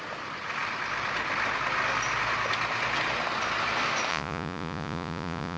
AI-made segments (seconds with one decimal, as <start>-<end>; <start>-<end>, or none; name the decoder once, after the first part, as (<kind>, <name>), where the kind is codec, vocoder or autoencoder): 4.1-5.6 (vocoder, Vocos)